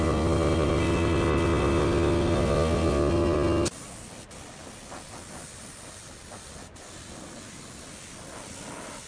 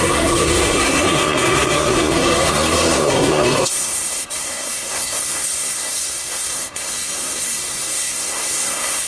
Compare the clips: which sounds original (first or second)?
first